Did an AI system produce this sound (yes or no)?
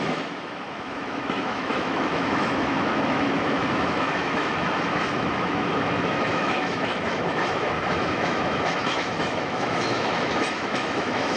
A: yes